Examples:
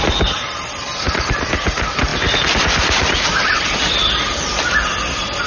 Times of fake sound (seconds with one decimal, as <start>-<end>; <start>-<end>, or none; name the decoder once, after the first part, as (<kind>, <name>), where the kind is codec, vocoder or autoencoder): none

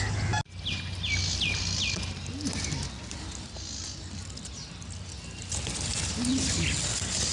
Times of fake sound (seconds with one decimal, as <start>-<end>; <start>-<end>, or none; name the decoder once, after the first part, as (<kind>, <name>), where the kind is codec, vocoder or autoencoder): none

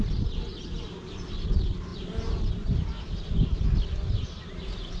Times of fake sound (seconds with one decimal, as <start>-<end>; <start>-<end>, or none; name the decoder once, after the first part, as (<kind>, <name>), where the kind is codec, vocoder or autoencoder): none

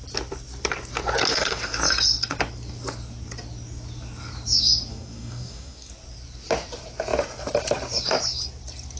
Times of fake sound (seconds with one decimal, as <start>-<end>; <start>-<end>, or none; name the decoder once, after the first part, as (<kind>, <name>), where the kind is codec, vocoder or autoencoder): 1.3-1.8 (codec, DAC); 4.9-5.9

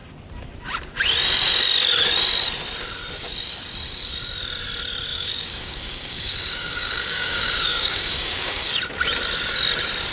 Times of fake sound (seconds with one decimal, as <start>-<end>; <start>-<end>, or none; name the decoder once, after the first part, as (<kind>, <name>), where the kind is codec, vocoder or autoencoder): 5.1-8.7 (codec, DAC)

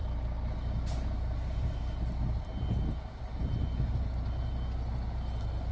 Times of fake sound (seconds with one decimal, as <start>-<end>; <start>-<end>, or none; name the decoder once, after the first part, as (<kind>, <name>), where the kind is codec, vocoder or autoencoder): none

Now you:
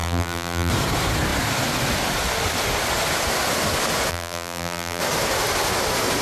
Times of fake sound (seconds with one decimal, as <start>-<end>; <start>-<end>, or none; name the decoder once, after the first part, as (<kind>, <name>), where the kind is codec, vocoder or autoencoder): 0.0-0.7 (vocoder, BigVGAN v2); 4.1-5.0

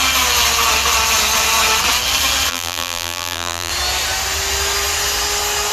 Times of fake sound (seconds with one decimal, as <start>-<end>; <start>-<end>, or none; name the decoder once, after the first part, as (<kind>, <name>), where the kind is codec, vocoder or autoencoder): 2.5-3.7 (vocoder, BigVGAN v2)